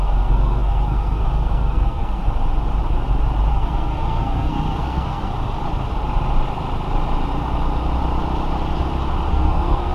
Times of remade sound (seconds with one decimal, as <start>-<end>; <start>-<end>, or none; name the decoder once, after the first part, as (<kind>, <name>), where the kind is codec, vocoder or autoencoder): 0.0-2.2 (codec, SNAC); 3.5-5.3; 9.3-9.9

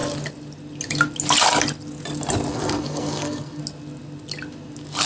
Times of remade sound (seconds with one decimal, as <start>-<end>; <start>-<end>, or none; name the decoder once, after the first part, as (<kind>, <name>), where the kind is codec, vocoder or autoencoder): 2.5-3.6 (codec, SNAC)

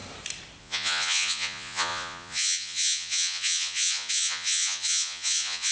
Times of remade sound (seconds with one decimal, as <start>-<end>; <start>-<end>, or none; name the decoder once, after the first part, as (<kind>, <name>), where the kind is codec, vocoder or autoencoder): 0.6-5.7 (vocoder, Vocos)

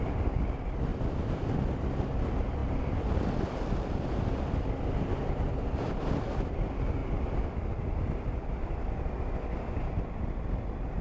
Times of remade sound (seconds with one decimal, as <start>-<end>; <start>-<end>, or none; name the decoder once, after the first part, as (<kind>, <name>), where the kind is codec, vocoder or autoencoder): 0.9-1.6 (vocoder, BigVGAN v2); 2.6-6.5; 7.0-9.2

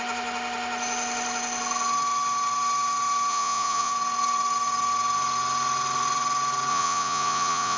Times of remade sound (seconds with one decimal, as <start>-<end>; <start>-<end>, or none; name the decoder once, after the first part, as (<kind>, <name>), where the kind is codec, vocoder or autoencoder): 3.3-3.9 (vocoder, Vocos); 6.7-7.8

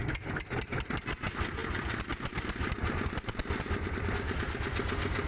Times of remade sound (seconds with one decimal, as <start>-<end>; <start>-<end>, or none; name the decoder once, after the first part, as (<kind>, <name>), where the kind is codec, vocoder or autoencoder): none

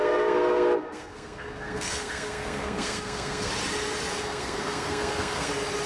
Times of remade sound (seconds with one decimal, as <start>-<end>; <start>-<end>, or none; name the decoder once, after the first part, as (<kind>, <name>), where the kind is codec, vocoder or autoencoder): 0.0-3.5 (codec, SNAC); 4.1-5.5

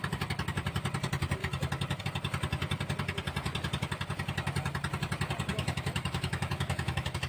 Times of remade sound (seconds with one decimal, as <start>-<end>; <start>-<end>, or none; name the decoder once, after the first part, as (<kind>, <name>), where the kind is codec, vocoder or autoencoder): 5.5-7.3 (autoencoder, DAC-VAE)